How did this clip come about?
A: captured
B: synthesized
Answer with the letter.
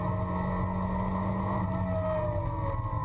A